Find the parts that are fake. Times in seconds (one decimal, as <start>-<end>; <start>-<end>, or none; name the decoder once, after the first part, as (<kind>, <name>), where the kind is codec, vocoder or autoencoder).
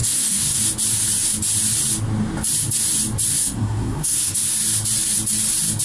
0.0-0.6 (codec, SNAC); 3.3-4.5